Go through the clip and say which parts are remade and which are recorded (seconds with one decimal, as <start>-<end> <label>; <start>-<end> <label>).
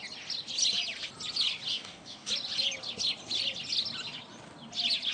0.0-1.7 recorded; 1.7-2.3 remade; 2.3-5.1 recorded